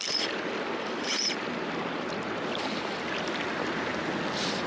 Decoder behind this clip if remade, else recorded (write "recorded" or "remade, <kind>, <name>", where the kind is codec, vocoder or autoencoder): recorded